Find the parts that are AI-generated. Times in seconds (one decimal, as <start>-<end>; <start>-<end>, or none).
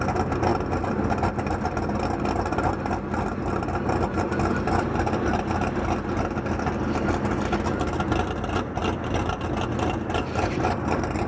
none